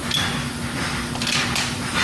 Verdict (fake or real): real